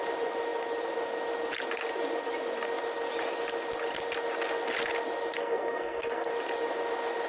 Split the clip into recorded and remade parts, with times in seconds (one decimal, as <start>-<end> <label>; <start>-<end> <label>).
0.0-5.4 recorded; 5.4-6.3 remade; 6.3-7.3 recorded